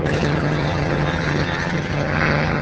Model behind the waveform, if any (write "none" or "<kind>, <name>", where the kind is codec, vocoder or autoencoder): vocoder, HiFi-GAN